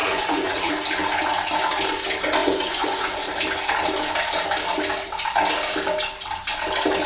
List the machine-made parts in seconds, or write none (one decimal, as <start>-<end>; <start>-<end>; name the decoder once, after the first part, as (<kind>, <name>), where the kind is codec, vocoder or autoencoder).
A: 0.0-0.7 (vocoder, Vocos); 2.4-3.3